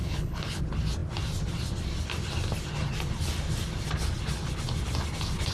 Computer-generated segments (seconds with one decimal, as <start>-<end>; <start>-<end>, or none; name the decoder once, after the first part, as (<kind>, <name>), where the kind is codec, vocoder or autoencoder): 0.0-0.6 (codec, HILCodec)